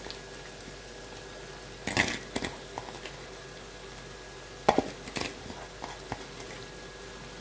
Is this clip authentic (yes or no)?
yes